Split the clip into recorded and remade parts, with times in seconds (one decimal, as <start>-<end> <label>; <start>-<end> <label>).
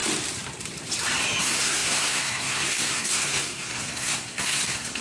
0.0-1.4 recorded; 1.4-5.0 remade